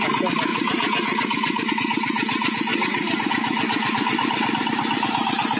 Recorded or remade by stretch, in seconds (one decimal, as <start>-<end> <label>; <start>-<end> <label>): 0.0-0.5 recorded; 0.5-1.7 remade; 1.7-2.7 recorded; 2.7-3.3 remade; 3.3-5.6 recorded